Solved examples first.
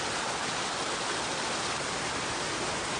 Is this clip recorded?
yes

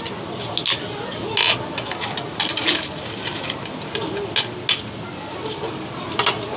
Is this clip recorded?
yes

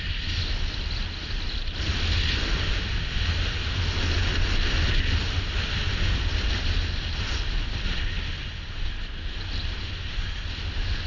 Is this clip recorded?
yes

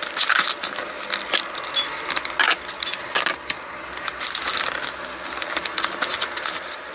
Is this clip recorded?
yes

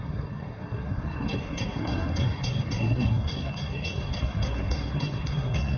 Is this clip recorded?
no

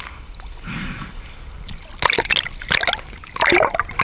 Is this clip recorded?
yes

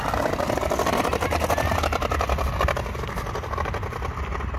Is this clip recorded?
yes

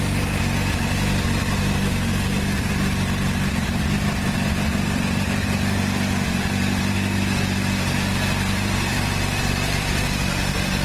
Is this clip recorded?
no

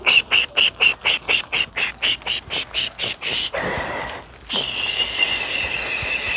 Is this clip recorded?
yes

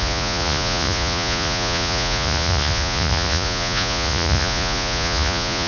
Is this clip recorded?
no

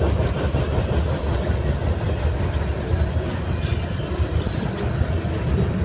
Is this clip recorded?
yes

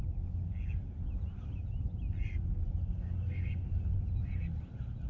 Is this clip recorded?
yes